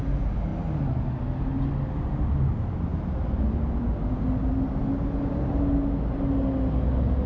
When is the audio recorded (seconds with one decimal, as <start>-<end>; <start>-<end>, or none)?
0.0-7.3